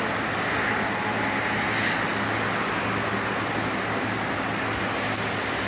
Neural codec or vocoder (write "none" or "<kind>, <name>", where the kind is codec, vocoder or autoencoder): none